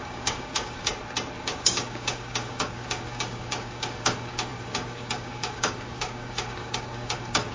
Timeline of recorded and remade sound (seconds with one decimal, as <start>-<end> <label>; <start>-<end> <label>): 0.0-0.9 remade; 0.9-1.4 recorded; 1.4-7.5 remade